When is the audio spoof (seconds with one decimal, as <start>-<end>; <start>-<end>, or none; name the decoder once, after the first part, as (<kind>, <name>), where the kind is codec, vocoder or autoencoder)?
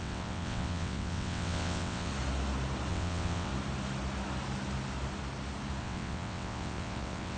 0.0-2.1 (vocoder, WaveNeXt); 2.9-3.5; 5.8-7.4